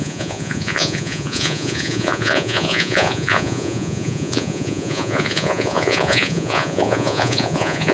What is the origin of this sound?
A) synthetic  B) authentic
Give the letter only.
A